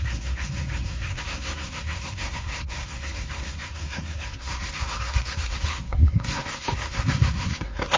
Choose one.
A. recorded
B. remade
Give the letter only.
B